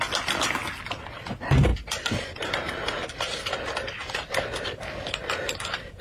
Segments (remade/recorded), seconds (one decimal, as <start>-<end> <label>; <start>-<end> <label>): 0.0-6.0 recorded